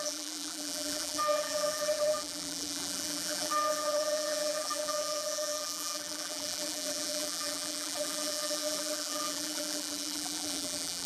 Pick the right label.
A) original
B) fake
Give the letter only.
B